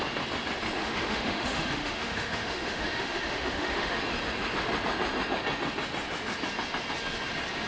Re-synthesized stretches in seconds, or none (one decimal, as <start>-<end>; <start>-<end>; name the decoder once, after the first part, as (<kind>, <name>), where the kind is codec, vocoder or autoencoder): 0.8-4.0 (autoencoder, DAC-VAE)